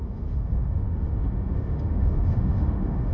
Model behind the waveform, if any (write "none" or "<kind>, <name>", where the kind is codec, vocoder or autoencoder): autoencoder, DAC-VAE